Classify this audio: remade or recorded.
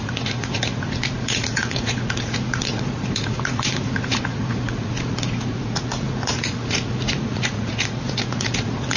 remade